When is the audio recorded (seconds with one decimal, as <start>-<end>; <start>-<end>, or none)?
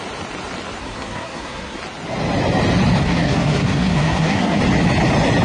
0.0-0.8; 1.8-3.0; 4.6-5.4